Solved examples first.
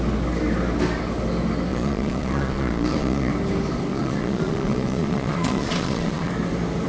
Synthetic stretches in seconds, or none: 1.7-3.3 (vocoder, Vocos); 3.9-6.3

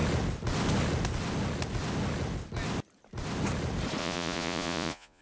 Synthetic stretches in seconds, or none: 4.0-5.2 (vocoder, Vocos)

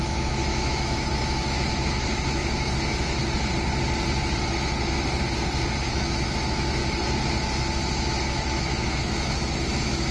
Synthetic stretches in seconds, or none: 0.0-3.2 (autoencoder, DAC-VAE); 5.9-6.8; 8.0-10.1

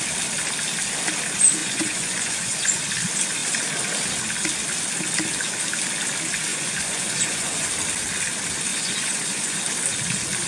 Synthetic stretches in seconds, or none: 1.6-2.8 (vocoder, Vocos); 6.5-7.7; 8.7-9.6

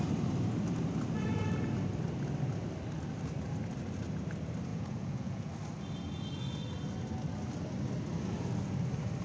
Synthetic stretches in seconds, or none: 4.7-5.5 (vocoder, Vocos)